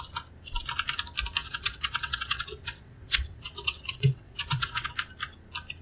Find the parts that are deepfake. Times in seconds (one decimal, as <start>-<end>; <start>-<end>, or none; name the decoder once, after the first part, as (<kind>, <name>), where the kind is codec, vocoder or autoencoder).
1.4-4.9 (vocoder, WaveNeXt)

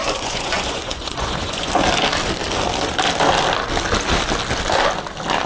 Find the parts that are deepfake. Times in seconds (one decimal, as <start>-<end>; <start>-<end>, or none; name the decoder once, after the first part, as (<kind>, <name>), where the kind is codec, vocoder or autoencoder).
0.0-1.7 (vocoder, Vocos)

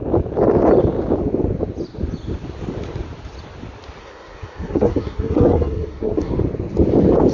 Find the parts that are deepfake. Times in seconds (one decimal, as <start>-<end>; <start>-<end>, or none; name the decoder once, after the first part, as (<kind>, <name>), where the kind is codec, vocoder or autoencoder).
4.0-6.3 (codec, SNAC)

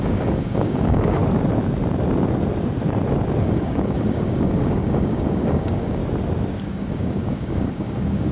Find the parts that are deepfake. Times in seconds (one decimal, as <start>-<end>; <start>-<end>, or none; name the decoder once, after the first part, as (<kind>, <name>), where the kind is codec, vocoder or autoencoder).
0.0-1.2 (codec, DAC); 3.4-6.0; 6.7-8.3

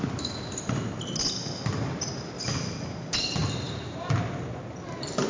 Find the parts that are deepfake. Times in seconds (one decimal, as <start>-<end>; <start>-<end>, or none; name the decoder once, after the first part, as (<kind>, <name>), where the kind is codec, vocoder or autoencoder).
none

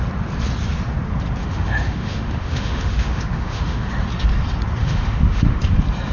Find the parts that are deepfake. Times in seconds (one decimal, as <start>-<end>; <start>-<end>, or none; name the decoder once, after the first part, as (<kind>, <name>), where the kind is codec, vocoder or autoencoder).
1.4-3.9 (autoencoder, DAC-VAE); 4.8-5.6